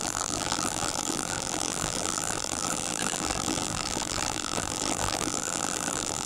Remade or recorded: remade